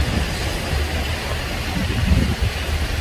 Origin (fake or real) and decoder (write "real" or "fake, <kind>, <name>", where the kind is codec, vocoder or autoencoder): real